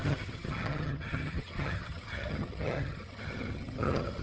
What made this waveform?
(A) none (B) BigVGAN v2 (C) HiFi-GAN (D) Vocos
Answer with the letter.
C